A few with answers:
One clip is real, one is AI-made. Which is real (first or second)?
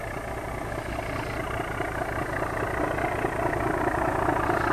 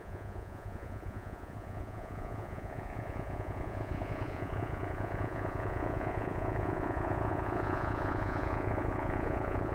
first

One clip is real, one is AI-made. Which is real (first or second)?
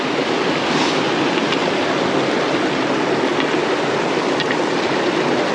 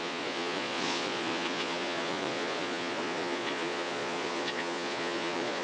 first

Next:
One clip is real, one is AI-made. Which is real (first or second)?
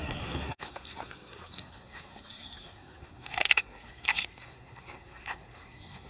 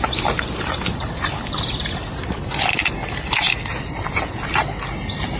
second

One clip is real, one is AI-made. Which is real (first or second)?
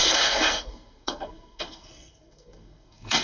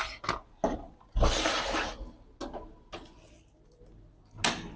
second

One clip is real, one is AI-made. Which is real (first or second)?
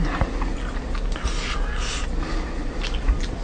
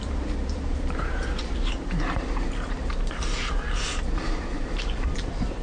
first